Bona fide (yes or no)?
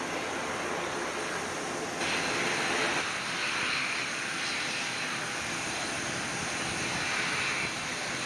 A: yes